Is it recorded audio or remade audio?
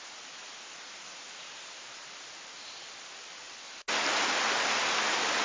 recorded